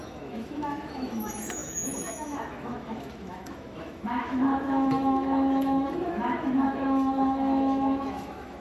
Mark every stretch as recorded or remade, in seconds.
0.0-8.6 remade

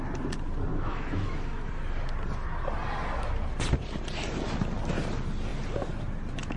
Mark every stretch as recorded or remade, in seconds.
0.0-0.7 recorded; 0.7-1.7 remade; 1.7-6.6 recorded